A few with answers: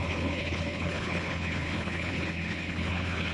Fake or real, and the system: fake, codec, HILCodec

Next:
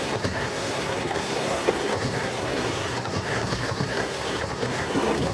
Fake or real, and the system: fake, codec, SNAC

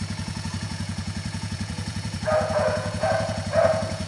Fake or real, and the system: fake, vocoder, Vocos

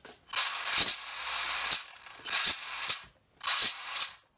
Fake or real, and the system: real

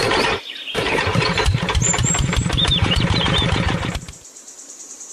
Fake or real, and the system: fake, vocoder, BigVGAN v2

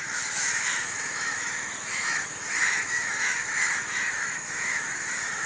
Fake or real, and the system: fake, autoencoder, DAC-VAE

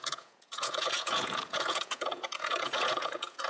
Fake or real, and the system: fake, vocoder, Vocos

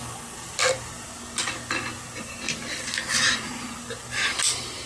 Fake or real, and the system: real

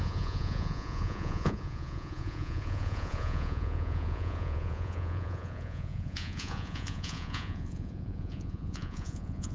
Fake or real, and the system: fake, vocoder, Vocos